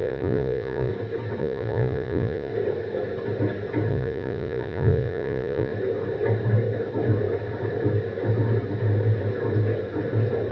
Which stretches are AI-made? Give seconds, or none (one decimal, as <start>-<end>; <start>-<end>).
0.0-0.9; 1.4-2.5; 3.9-5.7